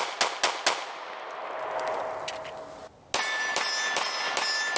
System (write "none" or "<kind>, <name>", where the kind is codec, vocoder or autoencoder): none